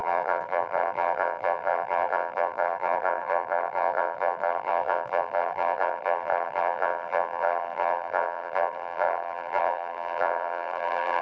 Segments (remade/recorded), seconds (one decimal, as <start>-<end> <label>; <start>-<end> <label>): 0.0-11.2 remade